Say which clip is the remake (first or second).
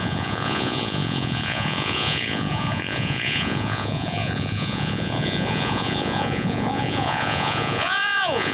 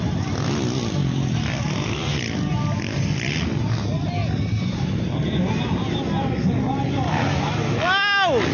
first